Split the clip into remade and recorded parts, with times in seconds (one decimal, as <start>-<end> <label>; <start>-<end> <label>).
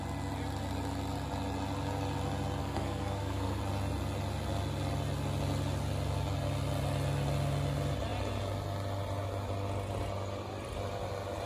0.0-2.6 recorded; 2.6-3.6 remade; 3.6-11.5 recorded